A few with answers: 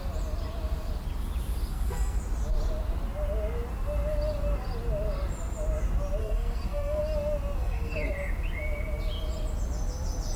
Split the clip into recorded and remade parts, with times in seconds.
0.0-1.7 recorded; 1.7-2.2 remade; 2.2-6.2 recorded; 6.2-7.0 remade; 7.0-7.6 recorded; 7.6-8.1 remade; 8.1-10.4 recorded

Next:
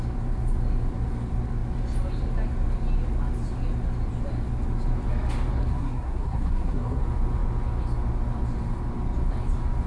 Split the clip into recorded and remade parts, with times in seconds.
0.0-5.6 recorded; 5.6-7.0 remade; 7.0-9.9 recorded

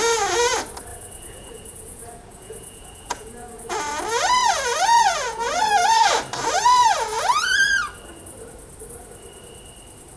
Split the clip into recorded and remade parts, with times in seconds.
0.0-0.9 recorded; 0.9-3.8 remade; 3.8-4.4 recorded; 4.4-5.6 remade; 5.6-10.2 recorded

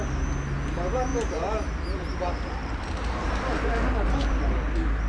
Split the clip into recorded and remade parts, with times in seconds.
0.0-2.6 recorded; 2.6-3.3 remade; 3.3-5.1 recorded

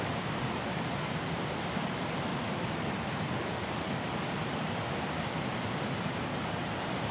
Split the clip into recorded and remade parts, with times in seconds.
0.0-7.1 recorded

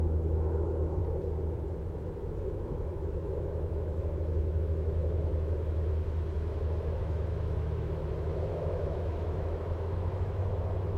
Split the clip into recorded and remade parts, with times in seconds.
0.0-1.0 remade; 1.0-1.8 recorded; 1.8-11.0 remade

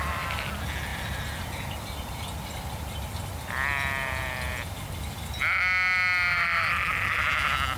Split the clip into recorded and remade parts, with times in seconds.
0.0-0.9 recorded; 0.9-5.0 remade; 5.0-7.8 recorded